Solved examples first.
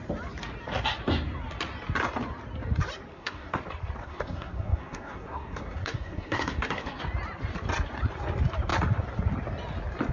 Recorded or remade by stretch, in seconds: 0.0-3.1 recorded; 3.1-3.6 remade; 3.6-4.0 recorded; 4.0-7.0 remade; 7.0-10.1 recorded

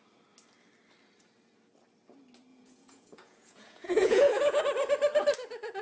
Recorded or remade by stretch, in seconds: 0.0-2.5 recorded; 2.5-4.6 remade; 4.6-5.8 recorded

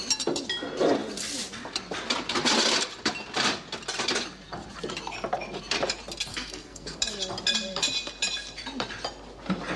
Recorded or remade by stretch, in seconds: 0.0-6.3 recorded; 6.3-7.0 remade; 7.0-9.8 recorded